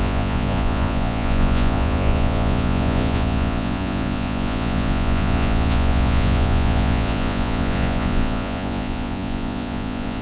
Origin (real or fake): fake